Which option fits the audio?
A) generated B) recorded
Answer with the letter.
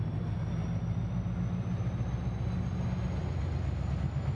B